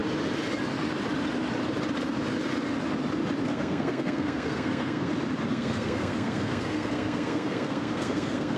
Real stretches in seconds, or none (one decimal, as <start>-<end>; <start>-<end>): 0.0-3.5; 5.1-5.5